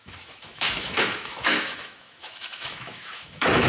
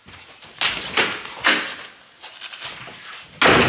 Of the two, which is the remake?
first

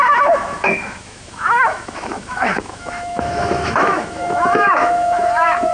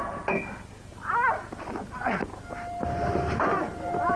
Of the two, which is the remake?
first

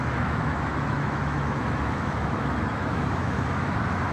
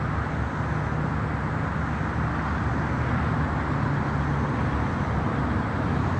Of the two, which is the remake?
first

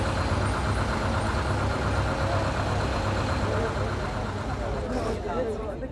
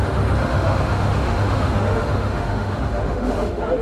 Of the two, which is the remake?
second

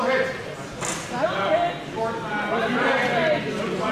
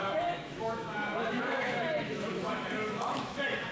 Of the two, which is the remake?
second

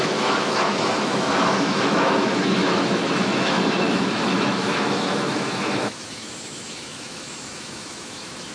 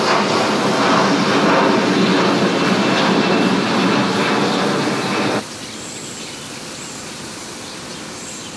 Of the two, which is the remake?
first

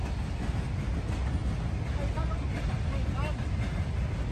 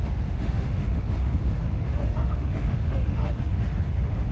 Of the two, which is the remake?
second